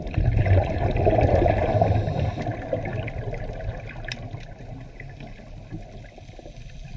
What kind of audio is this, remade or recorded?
recorded